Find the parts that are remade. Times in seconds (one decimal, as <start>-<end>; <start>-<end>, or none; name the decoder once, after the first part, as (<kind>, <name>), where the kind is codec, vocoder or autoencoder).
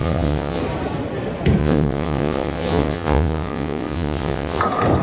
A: 0.0-0.6 (vocoder, WaveNeXt); 1.6-4.6